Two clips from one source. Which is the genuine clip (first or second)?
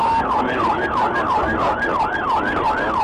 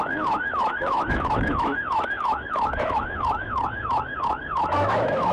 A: first